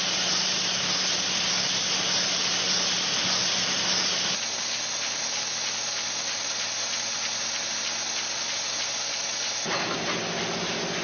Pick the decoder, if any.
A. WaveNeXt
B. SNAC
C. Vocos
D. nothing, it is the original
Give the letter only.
D